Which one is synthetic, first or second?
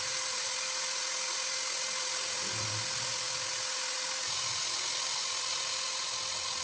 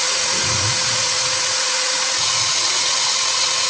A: second